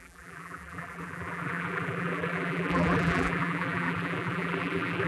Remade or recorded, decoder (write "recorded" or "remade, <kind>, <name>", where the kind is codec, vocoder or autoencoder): remade, vocoder, BigVGAN v2